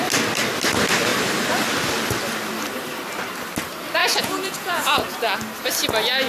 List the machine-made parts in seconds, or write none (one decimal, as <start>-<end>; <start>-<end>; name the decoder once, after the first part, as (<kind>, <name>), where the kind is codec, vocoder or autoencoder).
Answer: 4.0-5.0 (vocoder, Vocos)